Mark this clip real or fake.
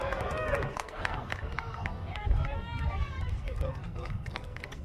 fake